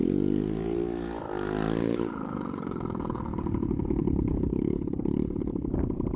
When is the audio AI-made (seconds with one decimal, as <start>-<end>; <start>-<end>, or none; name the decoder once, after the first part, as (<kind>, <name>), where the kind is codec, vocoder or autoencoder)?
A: 1.8-5.5 (codec, HILCodec)